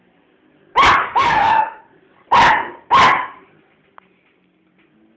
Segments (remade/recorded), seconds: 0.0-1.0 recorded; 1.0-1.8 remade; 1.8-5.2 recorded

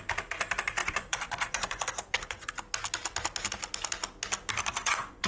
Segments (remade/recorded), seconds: 0.0-0.8 recorded; 0.8-2.5 remade; 2.5-4.7 recorded; 4.7-5.3 remade

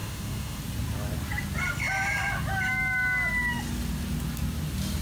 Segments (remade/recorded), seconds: 0.0-0.6 remade; 0.6-5.0 recorded